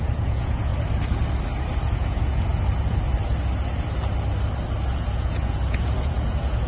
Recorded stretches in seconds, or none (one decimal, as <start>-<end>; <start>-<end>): 0.7-1.8; 2.5-4.9